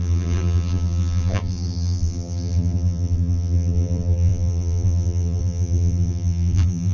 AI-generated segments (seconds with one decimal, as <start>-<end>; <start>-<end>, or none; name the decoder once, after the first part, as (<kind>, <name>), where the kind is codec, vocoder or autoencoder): 0.0-6.9 (vocoder, BigVGAN v2)